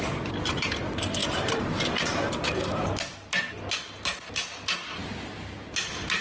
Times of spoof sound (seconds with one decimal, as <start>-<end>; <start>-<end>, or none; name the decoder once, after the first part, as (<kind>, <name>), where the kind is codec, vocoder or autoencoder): none